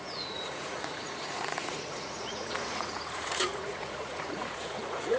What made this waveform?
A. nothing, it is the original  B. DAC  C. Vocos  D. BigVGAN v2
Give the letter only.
C